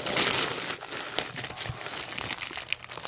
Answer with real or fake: real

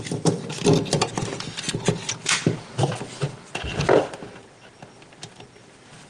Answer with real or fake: real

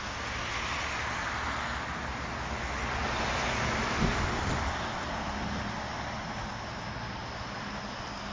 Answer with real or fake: real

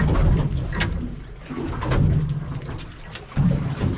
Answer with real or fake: real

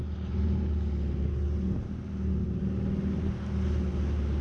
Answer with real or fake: real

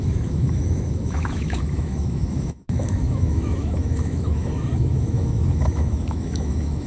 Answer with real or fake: fake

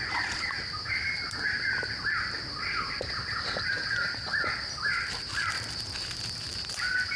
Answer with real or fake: real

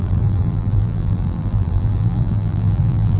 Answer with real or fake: fake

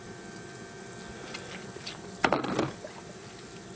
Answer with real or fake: real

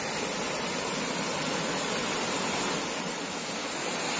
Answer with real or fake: real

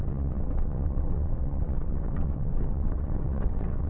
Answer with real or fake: fake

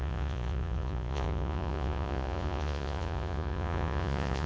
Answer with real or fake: fake